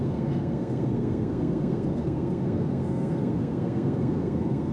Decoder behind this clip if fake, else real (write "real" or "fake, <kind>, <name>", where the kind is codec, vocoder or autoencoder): fake, codec, SNAC